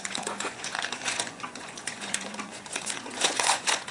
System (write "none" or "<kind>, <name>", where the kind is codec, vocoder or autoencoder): vocoder, Vocos